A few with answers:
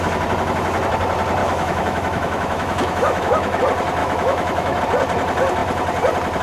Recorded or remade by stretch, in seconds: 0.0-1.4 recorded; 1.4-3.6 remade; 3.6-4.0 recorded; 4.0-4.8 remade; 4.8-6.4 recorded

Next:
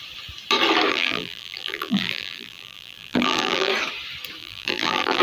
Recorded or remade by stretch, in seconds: 0.0-0.9 recorded; 0.9-3.7 remade; 3.7-4.4 recorded; 4.4-5.2 remade

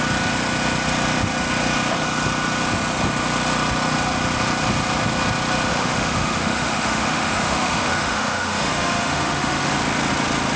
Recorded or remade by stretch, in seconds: 0.0-5.7 recorded; 5.7-9.7 remade; 9.7-10.6 recorded

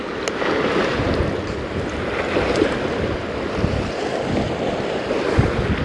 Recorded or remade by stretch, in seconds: 0.0-5.8 recorded